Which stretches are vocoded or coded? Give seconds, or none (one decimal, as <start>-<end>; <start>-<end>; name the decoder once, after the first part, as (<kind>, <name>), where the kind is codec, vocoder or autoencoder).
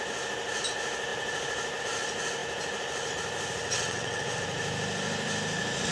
3.6-4.4 (vocoder, WaveNeXt)